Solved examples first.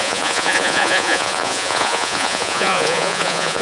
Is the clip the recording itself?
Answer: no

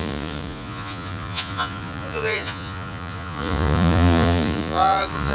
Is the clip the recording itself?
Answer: no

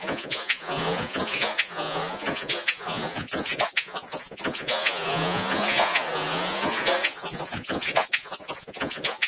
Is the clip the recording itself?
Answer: no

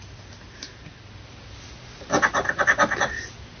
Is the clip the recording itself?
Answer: yes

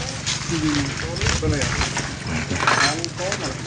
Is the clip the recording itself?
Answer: yes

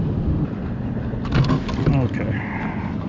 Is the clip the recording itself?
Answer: yes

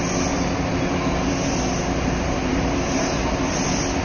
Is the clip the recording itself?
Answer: yes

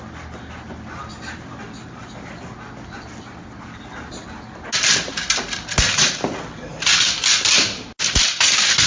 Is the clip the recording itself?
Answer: yes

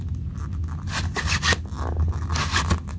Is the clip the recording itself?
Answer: yes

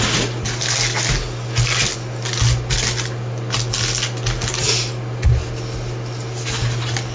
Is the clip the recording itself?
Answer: yes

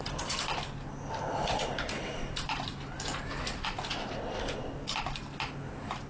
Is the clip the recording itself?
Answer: yes